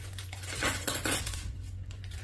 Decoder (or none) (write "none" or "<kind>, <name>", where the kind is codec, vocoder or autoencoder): vocoder, Vocos